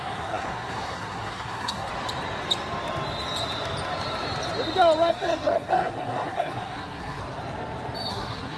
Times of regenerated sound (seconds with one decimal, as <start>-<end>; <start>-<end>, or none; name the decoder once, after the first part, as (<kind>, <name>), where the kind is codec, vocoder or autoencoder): 0.0-1.9 (codec, SNAC); 5.1-7.2; 8.1-8.6